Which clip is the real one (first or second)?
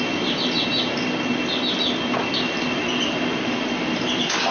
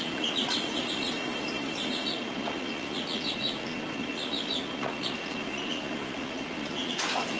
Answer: first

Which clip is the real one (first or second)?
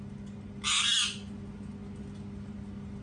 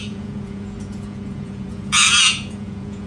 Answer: first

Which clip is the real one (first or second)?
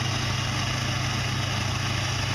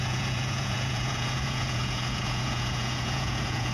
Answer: first